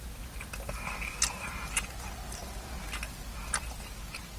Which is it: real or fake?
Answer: real